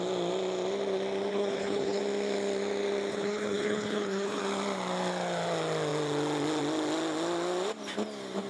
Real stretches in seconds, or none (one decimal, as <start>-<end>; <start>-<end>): 0.0-1.3; 2.0-3.1; 4.4-8.5